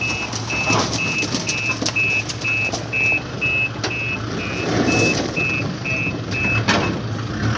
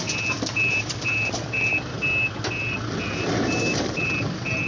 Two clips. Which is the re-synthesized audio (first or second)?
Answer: second